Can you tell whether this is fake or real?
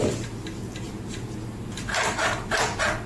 real